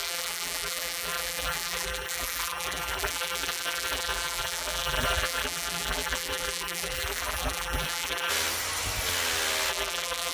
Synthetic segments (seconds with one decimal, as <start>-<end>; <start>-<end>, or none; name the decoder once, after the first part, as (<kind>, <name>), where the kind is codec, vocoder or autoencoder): 0.0-8.3 (vocoder, BigVGAN v2); 9.7-10.3

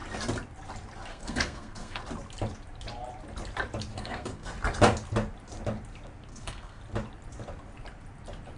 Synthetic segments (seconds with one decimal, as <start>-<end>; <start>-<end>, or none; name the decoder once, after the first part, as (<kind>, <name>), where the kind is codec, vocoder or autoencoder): 1.1-2.0 (codec, SNAC); 3.9-4.5; 6.3-6.8

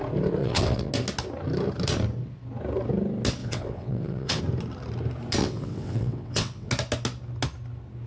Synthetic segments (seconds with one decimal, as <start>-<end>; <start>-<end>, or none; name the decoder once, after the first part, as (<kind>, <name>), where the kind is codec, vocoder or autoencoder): 0.4-0.9 (vocoder, WaveNeXt); 3.4-4.4; 5.4-6.7

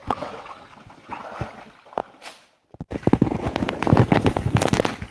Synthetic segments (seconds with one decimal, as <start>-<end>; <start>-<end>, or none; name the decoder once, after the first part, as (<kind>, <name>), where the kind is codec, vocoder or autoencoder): 0.0-1.2 (vocoder, WaveNeXt)

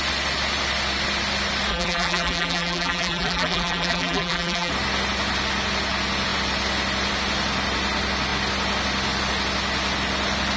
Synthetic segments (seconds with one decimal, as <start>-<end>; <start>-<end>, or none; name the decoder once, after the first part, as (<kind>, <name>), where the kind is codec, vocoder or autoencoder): 1.7-4.7 (vocoder, BigVGAN v2)